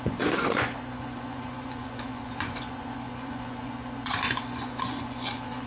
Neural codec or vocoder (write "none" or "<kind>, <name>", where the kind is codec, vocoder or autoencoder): vocoder, Vocos